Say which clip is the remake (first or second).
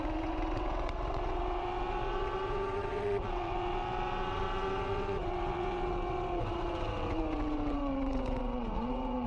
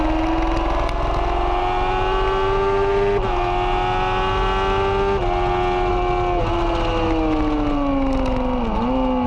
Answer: first